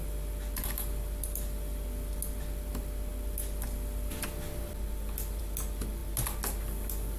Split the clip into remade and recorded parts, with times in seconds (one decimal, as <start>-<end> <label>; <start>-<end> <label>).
0.0-7.2 recorded